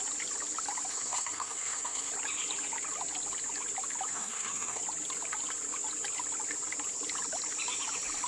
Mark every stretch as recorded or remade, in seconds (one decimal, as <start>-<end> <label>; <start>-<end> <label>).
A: 0.0-0.9 recorded; 0.9-2.1 remade; 2.1-4.1 recorded; 4.1-4.8 remade; 4.8-8.3 recorded